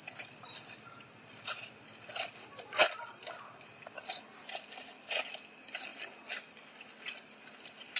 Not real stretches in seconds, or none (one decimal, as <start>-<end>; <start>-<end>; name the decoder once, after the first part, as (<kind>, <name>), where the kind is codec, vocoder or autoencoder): none